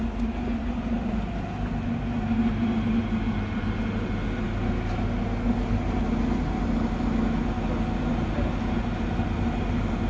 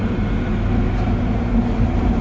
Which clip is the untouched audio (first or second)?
first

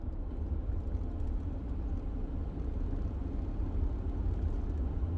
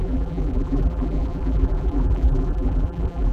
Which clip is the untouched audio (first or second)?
first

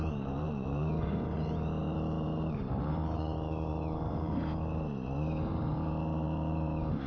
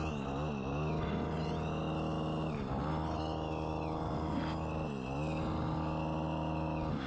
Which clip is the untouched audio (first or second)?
second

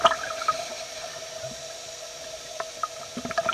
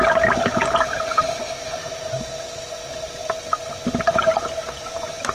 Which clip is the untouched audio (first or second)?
second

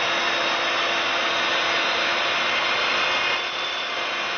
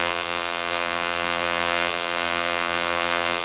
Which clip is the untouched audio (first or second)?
first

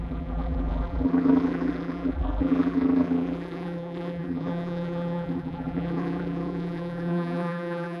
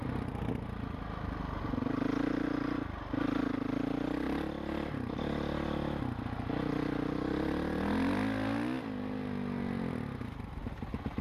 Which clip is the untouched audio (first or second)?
second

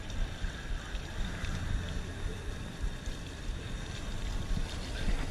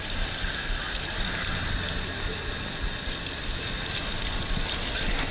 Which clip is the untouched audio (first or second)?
second